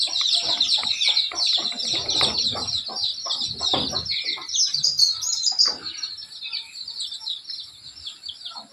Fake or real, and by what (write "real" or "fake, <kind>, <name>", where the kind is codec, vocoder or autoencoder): real